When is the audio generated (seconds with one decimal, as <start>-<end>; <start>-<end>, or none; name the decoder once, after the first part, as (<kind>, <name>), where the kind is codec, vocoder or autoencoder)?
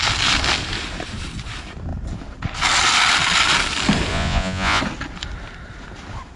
4.1-4.8 (vocoder, Vocos)